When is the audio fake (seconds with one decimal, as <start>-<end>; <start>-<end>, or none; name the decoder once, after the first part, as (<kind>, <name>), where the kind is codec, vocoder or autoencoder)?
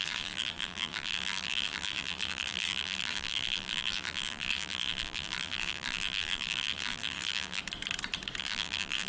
0.0-7.6 (vocoder, BigVGAN v2); 8.4-9.1